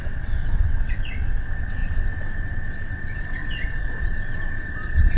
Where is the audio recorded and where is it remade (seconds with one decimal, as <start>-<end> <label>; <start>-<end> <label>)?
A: 0.0-5.2 remade